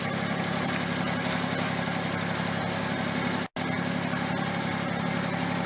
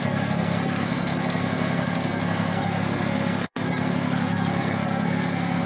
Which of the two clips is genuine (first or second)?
first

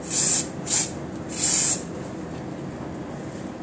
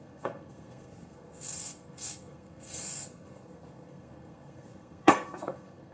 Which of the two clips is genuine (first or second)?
first